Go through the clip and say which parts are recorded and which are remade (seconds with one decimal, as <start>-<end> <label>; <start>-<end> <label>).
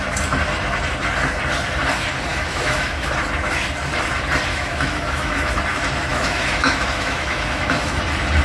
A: 0.0-2.3 recorded; 2.3-3.1 remade; 3.1-4.5 recorded; 4.5-5.5 remade; 5.5-6.1 recorded; 6.1-8.0 remade; 8.0-8.4 recorded